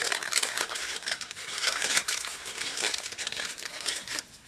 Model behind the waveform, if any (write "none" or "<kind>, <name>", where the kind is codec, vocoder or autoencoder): codec, SNAC